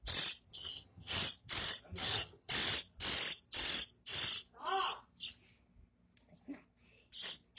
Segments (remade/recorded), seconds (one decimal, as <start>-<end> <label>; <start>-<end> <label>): 0.0-0.5 recorded; 0.5-1.1 remade; 1.1-2.0 recorded; 2.0-2.5 remade; 2.5-7.6 recorded